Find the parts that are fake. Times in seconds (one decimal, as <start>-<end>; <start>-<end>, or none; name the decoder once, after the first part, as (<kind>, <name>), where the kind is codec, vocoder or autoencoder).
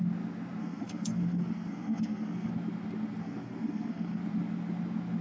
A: 0.6-2.5 (codec, SNAC); 3.2-4.2